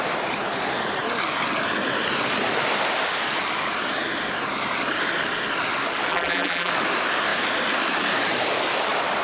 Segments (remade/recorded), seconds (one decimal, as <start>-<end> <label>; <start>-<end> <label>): 0.0-6.1 recorded; 6.1-6.7 remade; 6.7-9.2 recorded